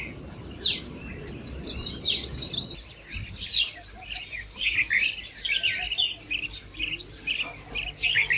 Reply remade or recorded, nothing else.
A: recorded